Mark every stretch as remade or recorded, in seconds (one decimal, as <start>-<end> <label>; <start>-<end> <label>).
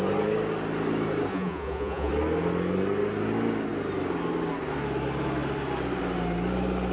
0.0-1.3 recorded; 1.3-2.1 remade; 2.1-6.9 recorded